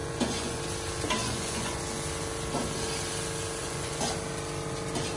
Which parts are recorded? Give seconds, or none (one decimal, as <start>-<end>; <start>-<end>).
0.6-1.2; 1.8-3.6; 4.1-5.2